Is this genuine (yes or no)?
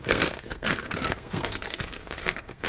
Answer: no